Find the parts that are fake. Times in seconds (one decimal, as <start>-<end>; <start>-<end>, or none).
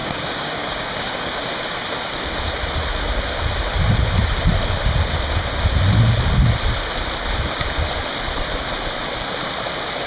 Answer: 0.0-1.3